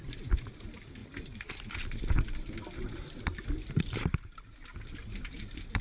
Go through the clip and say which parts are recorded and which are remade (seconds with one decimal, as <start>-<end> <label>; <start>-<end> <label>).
0.0-5.8 recorded